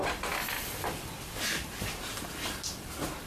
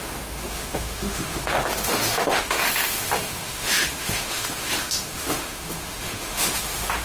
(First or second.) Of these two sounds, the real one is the first